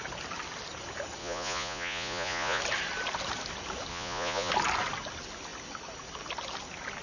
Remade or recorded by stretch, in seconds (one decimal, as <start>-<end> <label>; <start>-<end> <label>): 0.0-1.2 recorded; 1.2-2.6 remade; 2.6-3.9 recorded; 3.9-4.5 remade; 4.5-7.0 recorded